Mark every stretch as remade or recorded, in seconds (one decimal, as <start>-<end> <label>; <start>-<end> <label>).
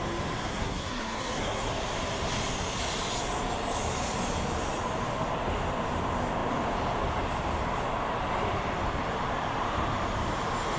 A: 0.0-0.4 recorded; 0.4-1.7 remade; 1.7-10.8 recorded